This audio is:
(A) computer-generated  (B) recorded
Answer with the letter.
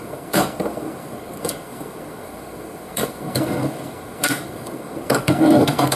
A